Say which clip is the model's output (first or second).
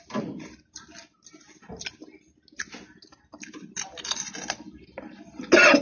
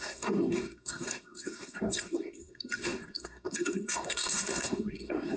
second